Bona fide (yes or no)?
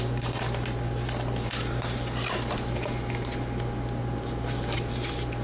yes